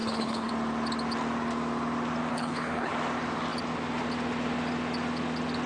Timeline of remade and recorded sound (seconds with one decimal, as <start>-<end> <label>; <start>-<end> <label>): 0.0-0.5 remade; 0.5-2.3 recorded; 2.3-2.9 remade; 2.9-5.7 recorded